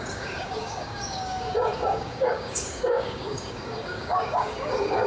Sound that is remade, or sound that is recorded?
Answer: remade